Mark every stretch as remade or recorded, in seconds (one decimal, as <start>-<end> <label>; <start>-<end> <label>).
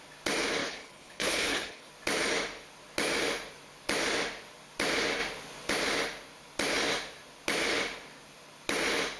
0.0-0.6 recorded; 0.6-1.9 remade; 1.9-9.2 recorded